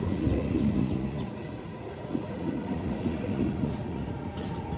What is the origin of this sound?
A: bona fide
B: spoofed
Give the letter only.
B